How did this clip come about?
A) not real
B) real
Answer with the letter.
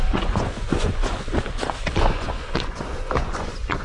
A